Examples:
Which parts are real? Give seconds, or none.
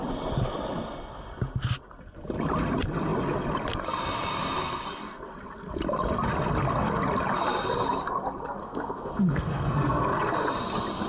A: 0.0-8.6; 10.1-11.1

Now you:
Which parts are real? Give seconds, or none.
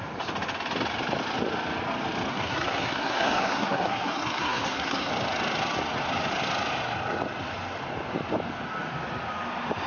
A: 0.0-2.3; 5.1-9.9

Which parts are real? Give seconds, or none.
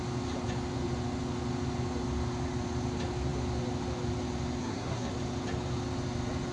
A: 0.0-4.6; 5.1-6.5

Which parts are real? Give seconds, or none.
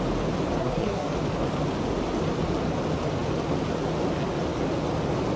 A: 0.0-0.6; 1.1-5.4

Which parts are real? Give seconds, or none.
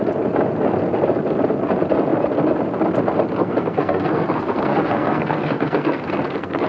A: 0.0-3.4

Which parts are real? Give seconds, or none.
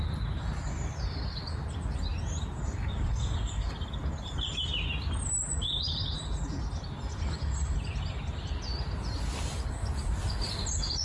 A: 0.0-11.0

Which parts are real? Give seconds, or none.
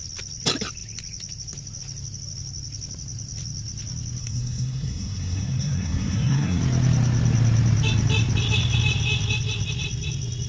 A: 0.0-4.2; 6.6-10.5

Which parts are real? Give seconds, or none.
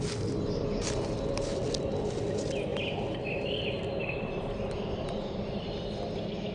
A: 0.0-6.5